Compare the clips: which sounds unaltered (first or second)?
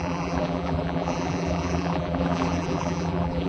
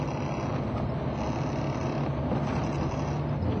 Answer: second